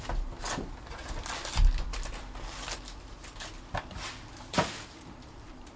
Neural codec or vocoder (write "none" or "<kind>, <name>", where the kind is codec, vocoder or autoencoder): none